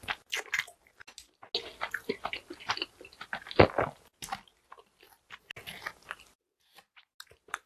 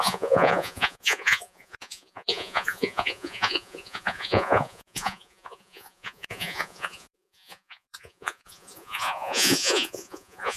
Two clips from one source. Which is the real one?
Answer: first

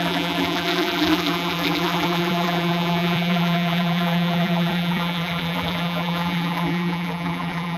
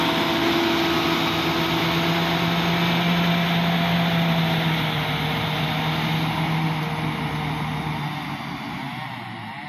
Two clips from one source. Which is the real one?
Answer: second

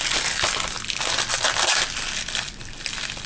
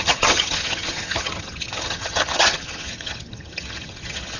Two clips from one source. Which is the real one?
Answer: first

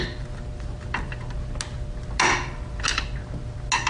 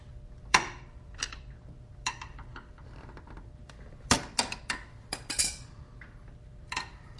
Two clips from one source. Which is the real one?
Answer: first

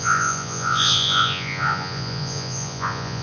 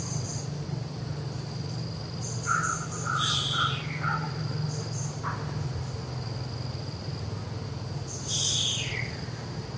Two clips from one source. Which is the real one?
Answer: second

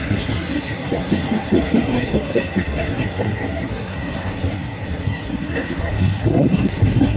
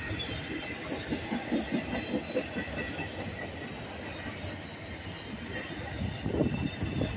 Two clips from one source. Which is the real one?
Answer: second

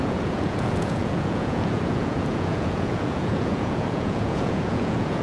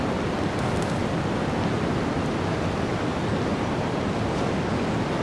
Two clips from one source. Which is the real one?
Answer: second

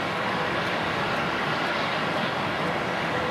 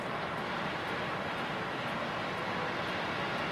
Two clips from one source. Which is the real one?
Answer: second